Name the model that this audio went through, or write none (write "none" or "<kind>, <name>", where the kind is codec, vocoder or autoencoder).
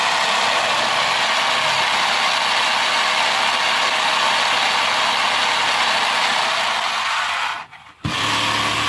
none